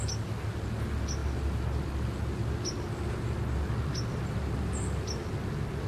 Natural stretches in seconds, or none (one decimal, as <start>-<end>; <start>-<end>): 0.0-5.9